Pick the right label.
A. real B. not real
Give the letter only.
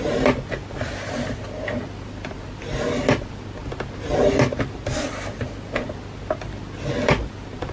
A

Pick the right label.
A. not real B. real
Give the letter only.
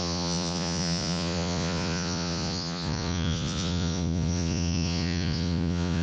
A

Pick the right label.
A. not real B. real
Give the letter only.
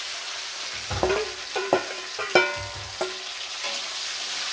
B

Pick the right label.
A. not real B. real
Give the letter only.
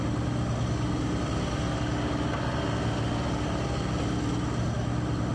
B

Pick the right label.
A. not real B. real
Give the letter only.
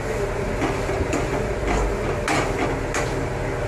B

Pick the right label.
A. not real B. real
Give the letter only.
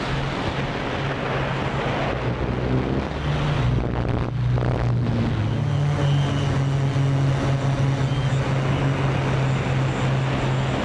B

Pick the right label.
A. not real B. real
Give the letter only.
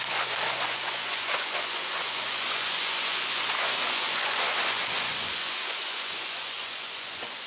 A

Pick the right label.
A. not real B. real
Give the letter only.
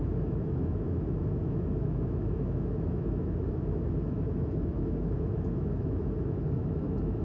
A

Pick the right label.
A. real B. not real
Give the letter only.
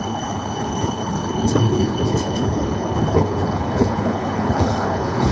B